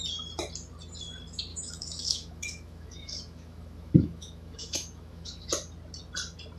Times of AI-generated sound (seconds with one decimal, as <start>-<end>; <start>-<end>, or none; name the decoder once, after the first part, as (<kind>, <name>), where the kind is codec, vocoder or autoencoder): 1.5-5.5 (autoencoder, DAC-VAE)